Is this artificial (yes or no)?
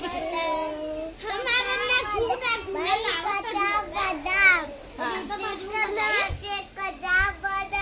no